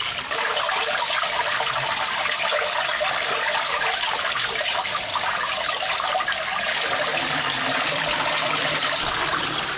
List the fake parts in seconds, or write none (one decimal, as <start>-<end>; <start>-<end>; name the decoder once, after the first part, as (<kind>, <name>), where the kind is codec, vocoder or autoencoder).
none